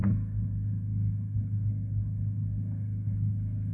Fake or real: fake